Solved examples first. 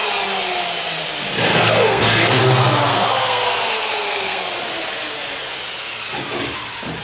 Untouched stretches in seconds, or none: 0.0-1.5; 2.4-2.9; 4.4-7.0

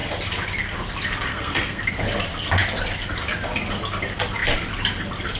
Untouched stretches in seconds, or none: 0.0-1.3; 1.8-5.4

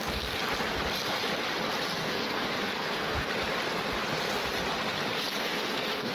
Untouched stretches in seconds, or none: 0.0-2.0; 3.3-5.4

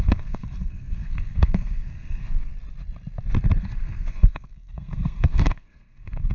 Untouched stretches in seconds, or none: 2.5-3.6

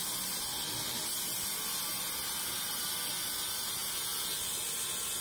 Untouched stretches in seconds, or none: 0.0-5.2

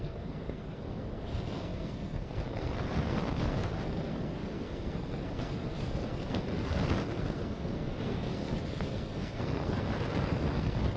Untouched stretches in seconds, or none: none

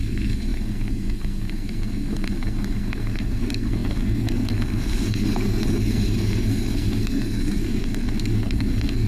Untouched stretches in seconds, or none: none

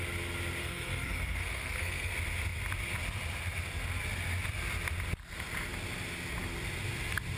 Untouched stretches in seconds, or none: 0.0-0.6; 2.1-7.4